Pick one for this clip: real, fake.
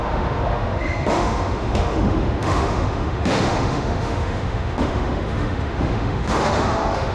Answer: fake